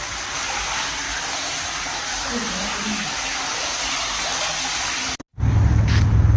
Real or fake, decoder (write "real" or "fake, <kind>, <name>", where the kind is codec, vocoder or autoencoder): real